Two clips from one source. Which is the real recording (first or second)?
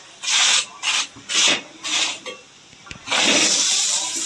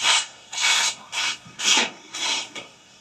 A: first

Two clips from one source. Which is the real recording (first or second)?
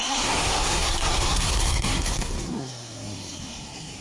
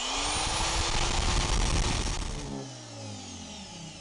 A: second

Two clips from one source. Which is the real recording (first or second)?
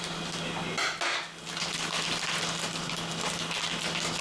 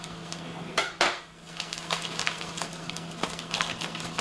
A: first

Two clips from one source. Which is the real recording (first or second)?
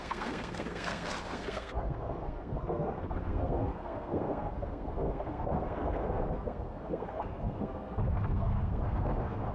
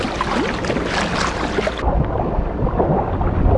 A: second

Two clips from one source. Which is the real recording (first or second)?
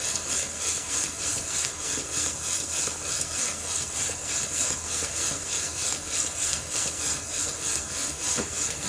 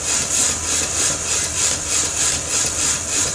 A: second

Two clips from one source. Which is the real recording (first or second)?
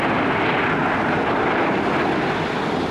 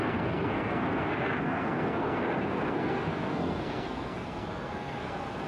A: first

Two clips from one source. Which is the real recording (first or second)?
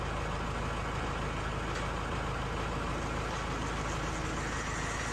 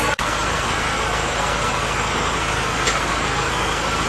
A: first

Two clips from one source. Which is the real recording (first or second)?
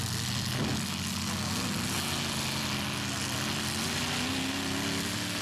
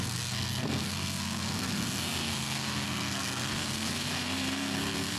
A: first